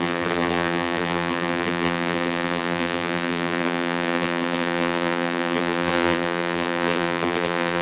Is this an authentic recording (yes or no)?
no